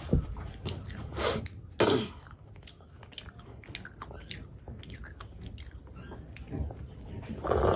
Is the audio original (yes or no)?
yes